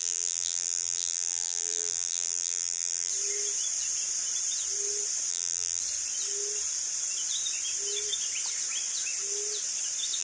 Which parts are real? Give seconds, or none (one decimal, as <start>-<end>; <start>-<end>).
3.1-5.3; 5.8-10.2